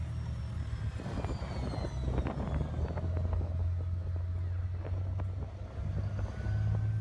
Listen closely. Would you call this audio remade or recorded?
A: recorded